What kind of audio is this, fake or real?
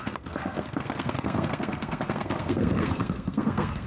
fake